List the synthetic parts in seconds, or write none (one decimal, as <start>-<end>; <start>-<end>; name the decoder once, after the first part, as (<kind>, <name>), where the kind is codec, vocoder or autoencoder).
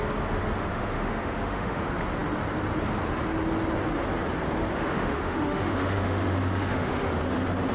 0.7-1.8 (autoencoder, DAC-VAE); 4.7-7.2